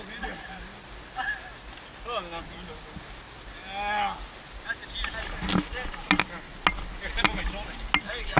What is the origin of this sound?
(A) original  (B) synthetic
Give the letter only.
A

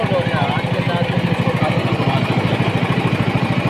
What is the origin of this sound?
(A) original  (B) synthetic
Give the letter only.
A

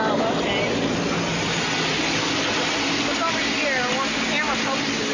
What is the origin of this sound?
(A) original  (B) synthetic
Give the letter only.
A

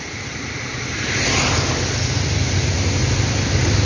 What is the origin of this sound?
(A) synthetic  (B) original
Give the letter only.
B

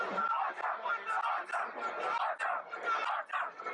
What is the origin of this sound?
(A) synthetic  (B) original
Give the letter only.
B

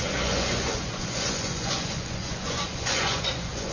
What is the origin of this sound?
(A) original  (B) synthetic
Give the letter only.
B